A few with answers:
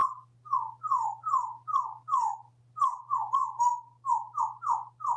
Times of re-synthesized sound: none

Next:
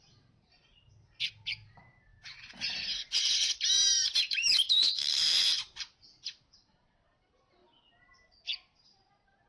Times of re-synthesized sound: 0.0-0.6 (vocoder, BigVGAN v2); 1.3-7.6; 8.8-9.5